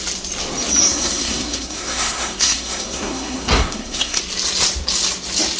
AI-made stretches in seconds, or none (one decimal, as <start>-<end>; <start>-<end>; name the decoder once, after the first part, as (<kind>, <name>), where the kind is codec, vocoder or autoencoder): 0.8-4.2 (codec, SNAC)